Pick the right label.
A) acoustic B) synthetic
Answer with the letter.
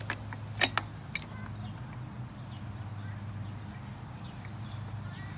A